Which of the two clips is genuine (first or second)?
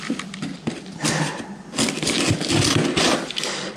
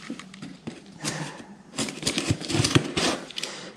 first